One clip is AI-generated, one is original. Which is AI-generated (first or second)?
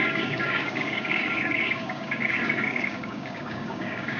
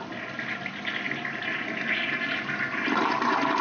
first